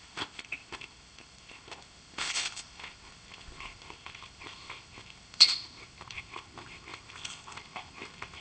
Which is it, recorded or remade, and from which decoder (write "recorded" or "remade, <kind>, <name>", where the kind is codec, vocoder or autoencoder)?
remade, codec, ZipCodec